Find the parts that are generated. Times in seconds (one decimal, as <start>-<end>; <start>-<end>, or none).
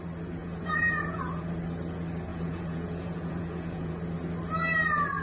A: 0.4-1.5; 2.3-3.9